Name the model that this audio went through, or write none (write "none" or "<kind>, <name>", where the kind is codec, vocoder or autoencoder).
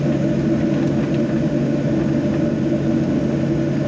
none